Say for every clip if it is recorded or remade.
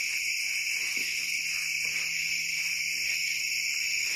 recorded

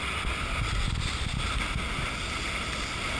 recorded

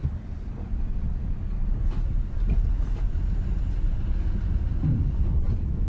recorded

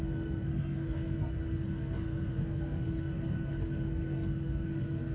remade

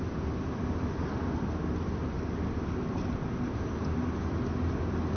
recorded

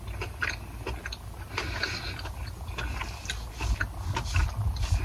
remade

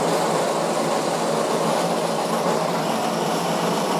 recorded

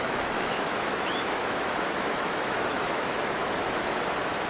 remade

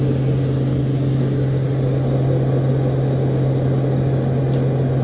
recorded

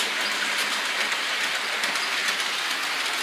recorded